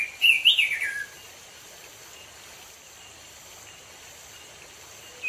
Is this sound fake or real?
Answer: real